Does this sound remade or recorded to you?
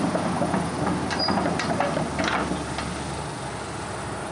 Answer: recorded